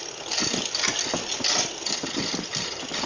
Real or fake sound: real